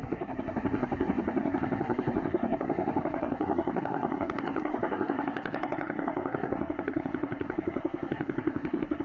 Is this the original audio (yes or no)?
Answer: no